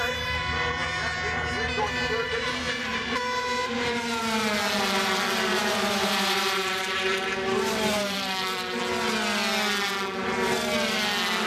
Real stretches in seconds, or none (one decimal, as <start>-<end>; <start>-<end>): 0.0-2.9; 4.2-5.5; 8.8-11.5